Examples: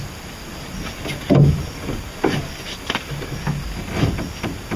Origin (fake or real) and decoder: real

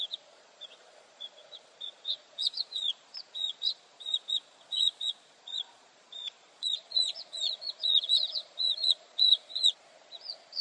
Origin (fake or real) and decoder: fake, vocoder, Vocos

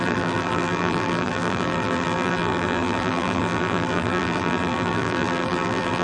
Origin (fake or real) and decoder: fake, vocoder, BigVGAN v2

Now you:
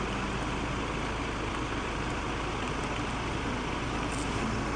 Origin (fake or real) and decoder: real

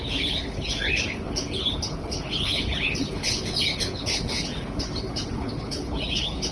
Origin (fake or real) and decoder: fake, codec, HILCodec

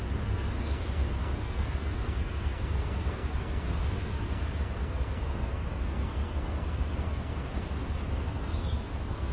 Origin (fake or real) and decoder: fake, codec, SNAC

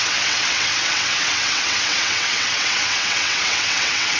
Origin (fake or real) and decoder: fake, vocoder, WaveNeXt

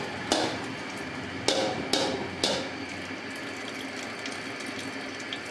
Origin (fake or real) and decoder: real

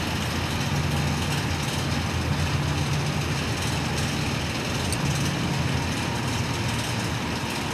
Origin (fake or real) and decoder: real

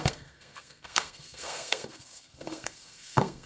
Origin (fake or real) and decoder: fake, codec, SNAC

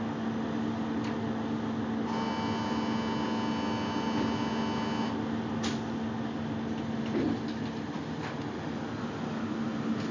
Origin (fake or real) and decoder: real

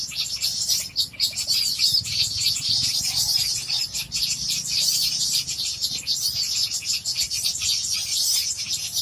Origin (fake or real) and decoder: real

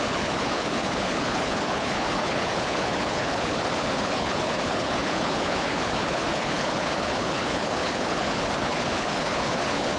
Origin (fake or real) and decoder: fake, codec, HILCodec